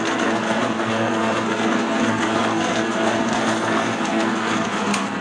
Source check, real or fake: fake